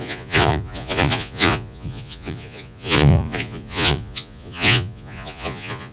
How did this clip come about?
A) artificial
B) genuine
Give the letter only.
A